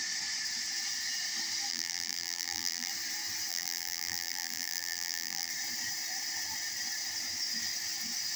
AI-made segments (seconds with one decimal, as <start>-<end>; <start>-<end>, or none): 1.7-2.9; 3.5-5.5